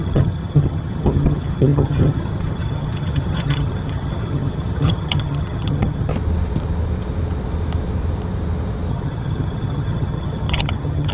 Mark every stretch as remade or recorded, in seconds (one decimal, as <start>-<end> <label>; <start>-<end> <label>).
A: 0.0-6.1 remade; 6.1-8.9 recorded; 8.9-11.1 remade

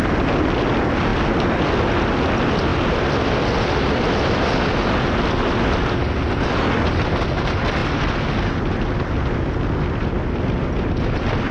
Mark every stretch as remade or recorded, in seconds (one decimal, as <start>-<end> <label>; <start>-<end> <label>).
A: 0.0-11.5 recorded